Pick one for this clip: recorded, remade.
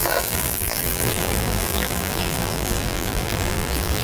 remade